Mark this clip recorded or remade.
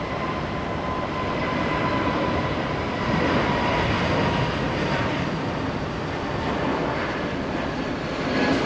recorded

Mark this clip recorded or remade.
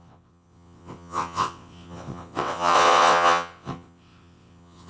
remade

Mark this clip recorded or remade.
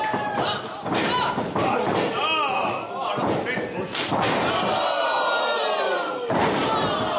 recorded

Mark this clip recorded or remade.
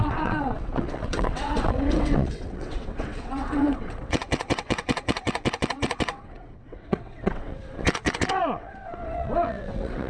remade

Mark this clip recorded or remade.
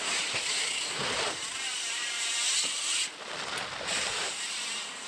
recorded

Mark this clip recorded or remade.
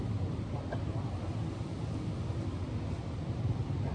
recorded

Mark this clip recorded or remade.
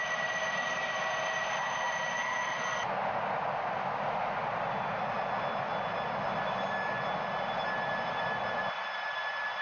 recorded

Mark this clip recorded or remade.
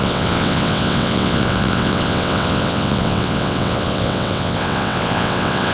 remade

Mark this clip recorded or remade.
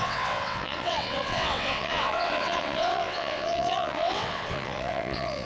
remade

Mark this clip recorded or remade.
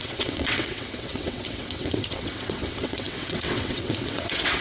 remade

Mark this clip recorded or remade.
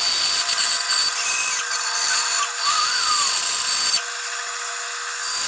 recorded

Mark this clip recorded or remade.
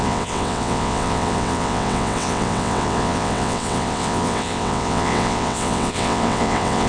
remade